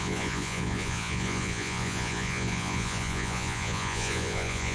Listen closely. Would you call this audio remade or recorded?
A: remade